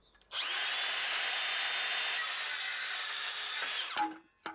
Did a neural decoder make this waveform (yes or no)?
no